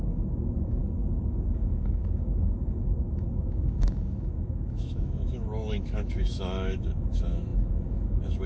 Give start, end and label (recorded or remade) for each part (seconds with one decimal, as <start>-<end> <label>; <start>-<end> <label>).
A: 0.0-0.8 remade; 0.8-1.3 recorded; 1.3-8.5 remade

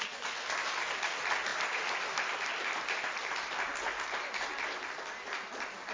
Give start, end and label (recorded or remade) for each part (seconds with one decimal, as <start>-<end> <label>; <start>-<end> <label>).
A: 0.0-5.9 recorded

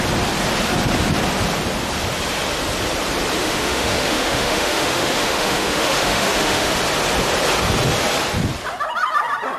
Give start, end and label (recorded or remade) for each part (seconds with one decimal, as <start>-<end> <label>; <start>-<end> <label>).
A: 0.0-3.4 recorded; 3.4-6.7 remade; 6.7-9.6 recorded

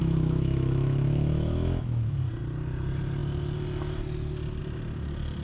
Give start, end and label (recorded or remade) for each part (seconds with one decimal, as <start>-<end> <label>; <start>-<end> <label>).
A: 0.0-2.2 remade; 2.2-5.4 recorded

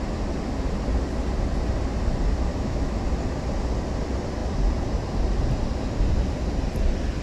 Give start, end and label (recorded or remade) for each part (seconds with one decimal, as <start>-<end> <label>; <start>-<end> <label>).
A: 0.0-2.5 recorded; 2.5-3.0 remade; 3.0-7.2 recorded